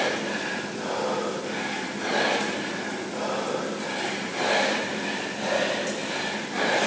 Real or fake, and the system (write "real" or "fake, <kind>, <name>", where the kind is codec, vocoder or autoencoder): real